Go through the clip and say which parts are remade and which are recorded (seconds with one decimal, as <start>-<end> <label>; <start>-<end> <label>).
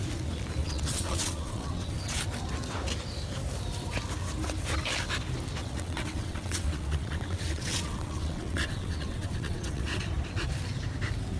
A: 0.0-0.6 recorded; 0.6-2.2 remade; 2.2-5.6 recorded; 5.6-10.0 remade; 10.0-11.4 recorded